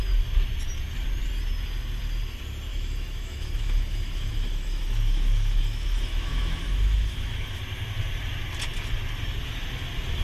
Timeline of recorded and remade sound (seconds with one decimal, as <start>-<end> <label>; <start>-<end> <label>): 0.0-2.7 recorded; 2.7-7.6 remade; 7.6-10.2 recorded